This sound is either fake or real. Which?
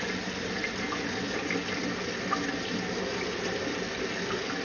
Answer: real